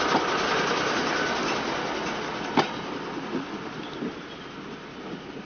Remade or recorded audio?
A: recorded